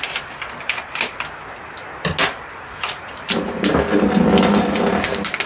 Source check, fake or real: real